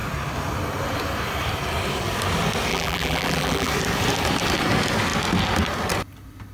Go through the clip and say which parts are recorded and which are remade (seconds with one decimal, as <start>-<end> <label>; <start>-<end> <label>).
0.0-2.7 recorded; 2.7-3.7 remade; 3.7-6.5 recorded